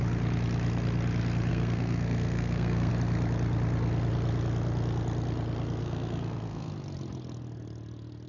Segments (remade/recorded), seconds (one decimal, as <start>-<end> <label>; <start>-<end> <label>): 0.0-1.5 recorded; 1.5-2.9 remade; 2.9-5.8 recorded; 5.8-6.7 remade; 6.7-8.3 recorded